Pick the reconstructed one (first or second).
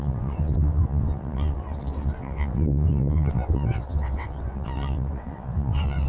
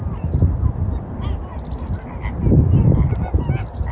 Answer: first